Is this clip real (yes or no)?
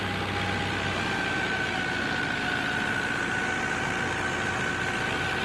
yes